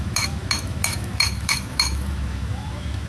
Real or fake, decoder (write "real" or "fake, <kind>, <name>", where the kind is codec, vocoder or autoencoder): fake, autoencoder, DAC-VAE